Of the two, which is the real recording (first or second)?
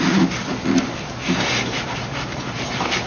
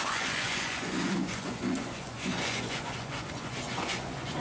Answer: first